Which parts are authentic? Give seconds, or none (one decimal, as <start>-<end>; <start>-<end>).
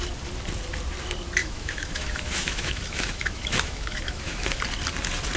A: 0.0-1.4; 4.6-5.4